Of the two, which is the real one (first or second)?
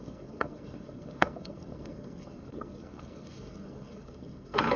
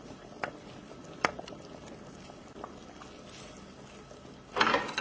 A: second